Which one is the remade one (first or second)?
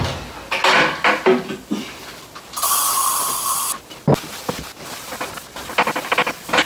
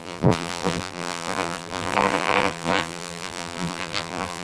second